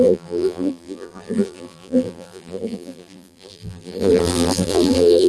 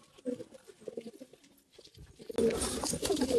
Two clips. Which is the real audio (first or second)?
second